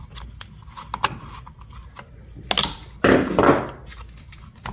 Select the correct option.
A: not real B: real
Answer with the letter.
B